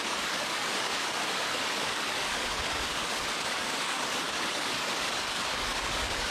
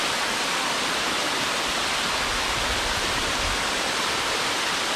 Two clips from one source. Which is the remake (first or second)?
first